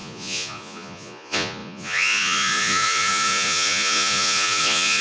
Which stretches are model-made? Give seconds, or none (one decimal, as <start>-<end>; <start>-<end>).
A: 0.0-5.0